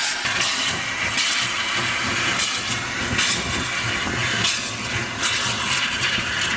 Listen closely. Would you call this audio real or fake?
real